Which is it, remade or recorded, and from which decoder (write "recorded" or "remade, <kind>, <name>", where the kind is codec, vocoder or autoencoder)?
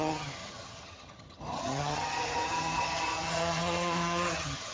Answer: remade, vocoder, HiFi-GAN